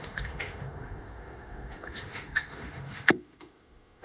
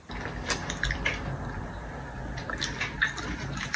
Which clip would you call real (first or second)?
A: second